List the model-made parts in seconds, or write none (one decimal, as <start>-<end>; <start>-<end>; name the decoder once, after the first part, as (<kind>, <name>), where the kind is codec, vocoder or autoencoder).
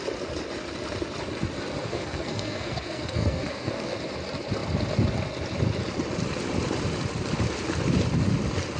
1.8-4.0 (codec, SNAC)